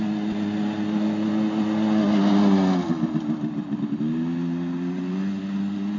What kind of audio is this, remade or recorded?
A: recorded